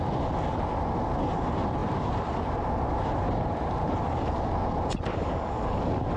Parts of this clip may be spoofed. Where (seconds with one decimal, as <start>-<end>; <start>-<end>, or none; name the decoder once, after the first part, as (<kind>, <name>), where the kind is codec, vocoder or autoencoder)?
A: 5.1-5.8 (codec, DAC)